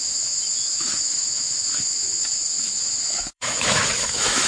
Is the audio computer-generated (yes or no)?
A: yes